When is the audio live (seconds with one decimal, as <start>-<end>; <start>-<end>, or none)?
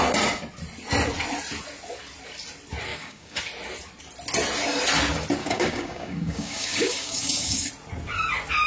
0.0-2.9; 3.4-5.4; 7.7-8.7